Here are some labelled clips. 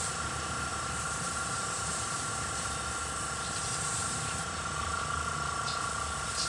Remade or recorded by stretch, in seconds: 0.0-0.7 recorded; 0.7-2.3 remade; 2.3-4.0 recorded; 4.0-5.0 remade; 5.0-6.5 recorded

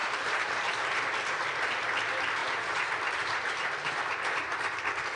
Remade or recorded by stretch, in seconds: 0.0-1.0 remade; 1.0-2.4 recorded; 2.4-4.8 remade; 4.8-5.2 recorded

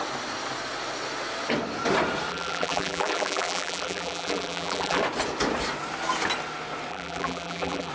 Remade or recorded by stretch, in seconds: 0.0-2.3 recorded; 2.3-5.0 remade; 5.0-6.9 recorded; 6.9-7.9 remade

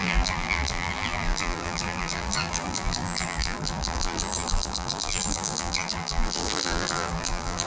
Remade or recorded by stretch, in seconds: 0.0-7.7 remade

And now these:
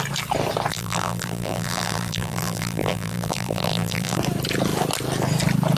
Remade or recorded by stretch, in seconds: 0.0-0.7 recorded; 0.7-4.2 remade; 4.2-5.8 recorded